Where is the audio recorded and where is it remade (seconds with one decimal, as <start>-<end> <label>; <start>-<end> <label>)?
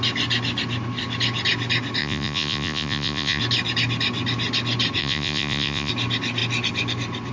0.0-2.0 recorded; 2.0-3.4 remade; 3.4-5.0 recorded; 5.0-5.9 remade; 5.9-7.3 recorded